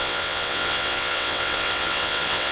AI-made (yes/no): yes